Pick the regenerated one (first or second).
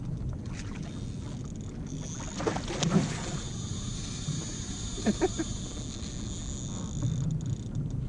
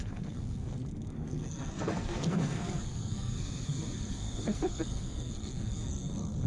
second